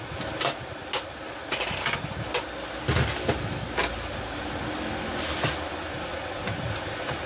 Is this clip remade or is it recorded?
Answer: recorded